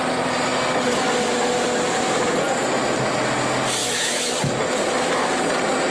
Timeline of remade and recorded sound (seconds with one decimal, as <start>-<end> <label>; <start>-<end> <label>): 0.0-3.8 recorded; 3.8-4.3 remade; 4.3-5.9 recorded

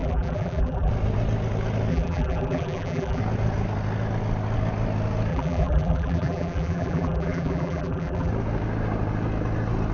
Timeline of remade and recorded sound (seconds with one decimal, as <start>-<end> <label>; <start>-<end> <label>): 0.0-0.9 remade; 0.9-1.9 recorded; 1.9-3.2 remade; 3.2-5.3 recorded; 5.3-8.3 remade; 8.3-9.9 recorded

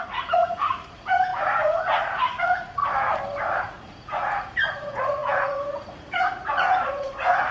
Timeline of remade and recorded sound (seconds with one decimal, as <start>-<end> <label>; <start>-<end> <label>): 0.0-2.8 remade; 2.8-3.6 recorded; 3.6-7.5 remade

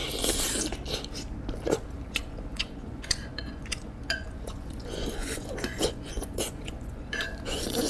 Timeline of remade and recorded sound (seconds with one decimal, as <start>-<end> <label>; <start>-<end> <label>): 0.0-1.9 recorded; 1.9-7.9 remade

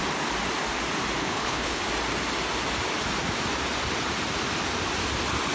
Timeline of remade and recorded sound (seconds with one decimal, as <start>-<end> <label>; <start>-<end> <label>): 0.0-1.2 recorded; 1.2-1.8 remade; 1.8-5.5 recorded

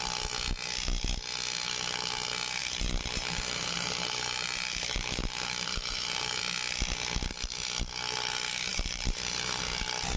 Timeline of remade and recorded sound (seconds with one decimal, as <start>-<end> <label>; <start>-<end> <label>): 0.0-2.6 recorded; 2.6-6.4 remade; 6.4-8.7 recorded; 8.7-9.6 remade; 9.6-10.2 recorded

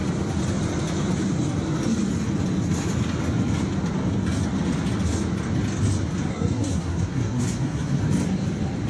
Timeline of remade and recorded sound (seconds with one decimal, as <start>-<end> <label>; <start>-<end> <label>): 0.0-6.3 recorded; 6.3-8.0 remade; 8.0-8.9 recorded

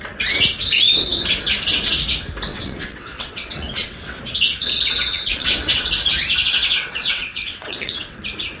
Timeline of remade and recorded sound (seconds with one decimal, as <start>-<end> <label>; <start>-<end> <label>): 0.0-2.5 recorded; 2.5-4.2 remade; 4.2-5.1 recorded; 5.1-5.9 remade; 5.9-6.6 recorded; 6.6-8.2 remade; 8.2-8.6 recorded